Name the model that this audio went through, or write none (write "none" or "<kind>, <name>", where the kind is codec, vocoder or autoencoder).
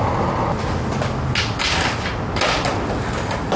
none